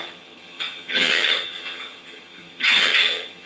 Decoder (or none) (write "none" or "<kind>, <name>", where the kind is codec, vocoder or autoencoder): vocoder, HiFi-GAN